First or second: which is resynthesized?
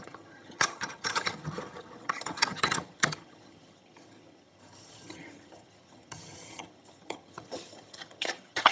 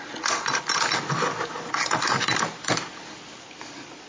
first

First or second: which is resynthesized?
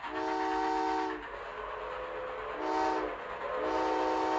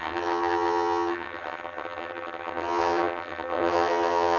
second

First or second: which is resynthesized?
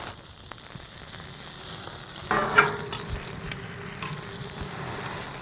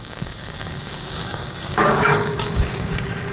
second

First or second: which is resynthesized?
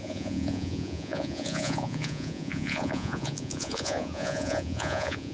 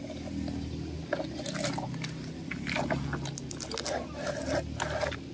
first